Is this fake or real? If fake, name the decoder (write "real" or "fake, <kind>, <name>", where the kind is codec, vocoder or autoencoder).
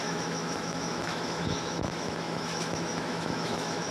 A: fake, autoencoder, DAC-VAE